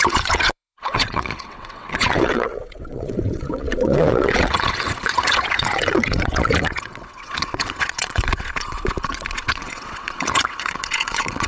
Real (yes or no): no